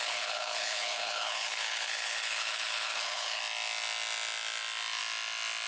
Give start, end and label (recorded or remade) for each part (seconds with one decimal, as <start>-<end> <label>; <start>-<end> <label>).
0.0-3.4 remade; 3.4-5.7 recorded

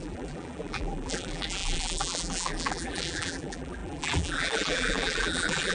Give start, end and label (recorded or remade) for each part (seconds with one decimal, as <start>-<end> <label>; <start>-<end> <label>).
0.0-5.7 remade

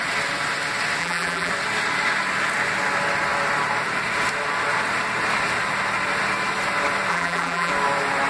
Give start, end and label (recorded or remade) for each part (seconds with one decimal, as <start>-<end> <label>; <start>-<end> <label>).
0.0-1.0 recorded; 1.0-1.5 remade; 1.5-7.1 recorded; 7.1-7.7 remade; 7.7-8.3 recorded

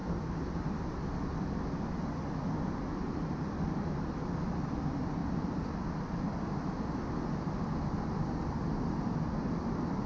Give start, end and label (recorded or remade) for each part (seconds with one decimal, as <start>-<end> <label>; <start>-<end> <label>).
0.0-10.1 recorded

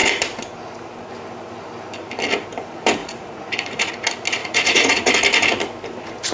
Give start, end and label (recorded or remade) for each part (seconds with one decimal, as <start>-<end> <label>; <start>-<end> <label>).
0.0-3.0 recorded; 3.0-3.9 remade; 3.9-4.4 recorded; 4.4-5.1 remade; 5.1-6.3 recorded

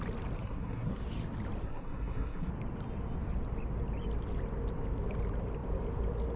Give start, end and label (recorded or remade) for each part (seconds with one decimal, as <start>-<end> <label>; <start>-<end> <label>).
0.0-0.4 recorded; 0.4-1.0 remade; 1.0-1.6 recorded; 1.6-2.5 remade; 2.5-6.4 recorded

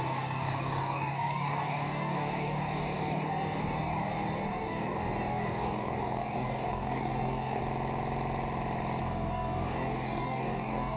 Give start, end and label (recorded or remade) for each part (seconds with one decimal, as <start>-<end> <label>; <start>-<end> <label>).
0.0-7.6 remade; 7.6-9.0 recorded; 9.0-11.0 remade